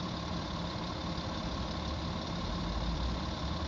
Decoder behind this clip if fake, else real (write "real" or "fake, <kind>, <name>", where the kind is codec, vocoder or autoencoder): fake, vocoder, BigVGAN v2